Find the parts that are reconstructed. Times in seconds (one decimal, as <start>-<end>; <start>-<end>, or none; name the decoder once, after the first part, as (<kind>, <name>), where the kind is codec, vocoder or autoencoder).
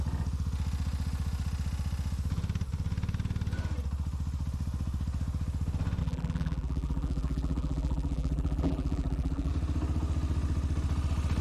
6.0-9.5 (vocoder, BigVGAN v2)